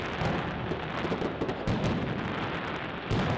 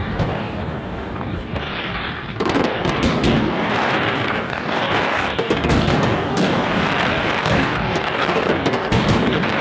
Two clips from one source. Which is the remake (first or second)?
second